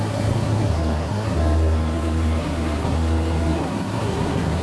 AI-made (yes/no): yes